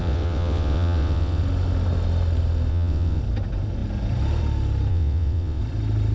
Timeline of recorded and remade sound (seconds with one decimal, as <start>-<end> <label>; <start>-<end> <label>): 0.0-1.4 remade; 1.4-2.7 recorded; 2.7-3.2 remade; 3.2-4.9 recorded; 4.9-5.6 remade; 5.6-6.1 recorded